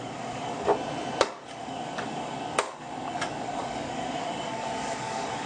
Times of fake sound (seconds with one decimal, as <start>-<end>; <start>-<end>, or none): 0.0-0.7; 1.2-5.5